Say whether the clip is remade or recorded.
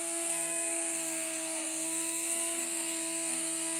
remade